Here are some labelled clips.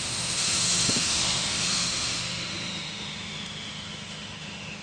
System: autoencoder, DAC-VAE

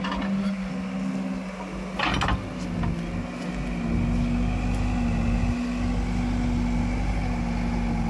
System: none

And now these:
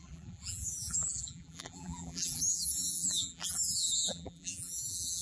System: vocoder, BigVGAN v2